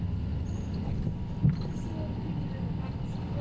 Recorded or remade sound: recorded